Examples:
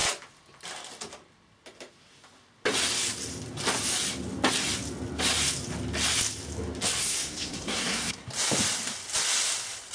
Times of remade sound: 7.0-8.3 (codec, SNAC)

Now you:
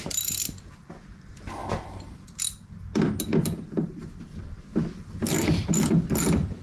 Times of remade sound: none